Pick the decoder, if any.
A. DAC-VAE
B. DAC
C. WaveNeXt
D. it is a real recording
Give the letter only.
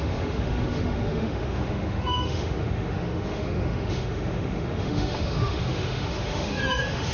A